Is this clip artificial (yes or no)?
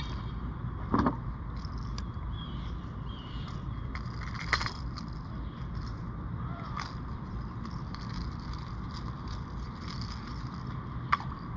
yes